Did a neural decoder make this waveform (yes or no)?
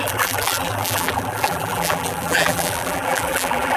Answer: yes